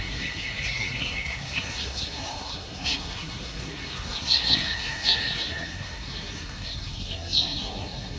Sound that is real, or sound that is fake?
fake